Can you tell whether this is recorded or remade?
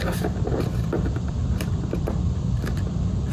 remade